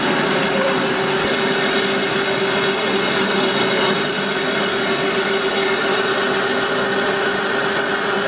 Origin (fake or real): real